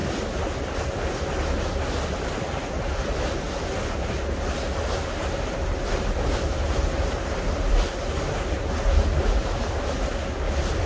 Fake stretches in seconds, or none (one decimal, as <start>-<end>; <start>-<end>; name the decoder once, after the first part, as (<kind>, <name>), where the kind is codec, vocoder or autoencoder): 5.6-7.7 (vocoder, BigVGAN v2)